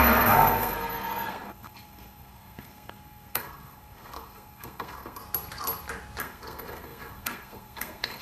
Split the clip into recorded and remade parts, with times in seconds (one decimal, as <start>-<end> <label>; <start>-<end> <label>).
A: 0.0-5.2 remade; 5.2-6.2 recorded; 6.2-8.2 remade